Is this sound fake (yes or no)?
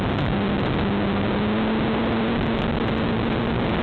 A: no